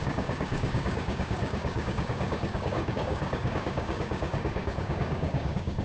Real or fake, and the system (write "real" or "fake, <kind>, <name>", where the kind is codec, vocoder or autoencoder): fake, codec, DAC